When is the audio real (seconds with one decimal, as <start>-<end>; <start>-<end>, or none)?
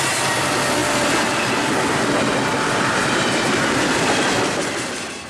0.0-5.3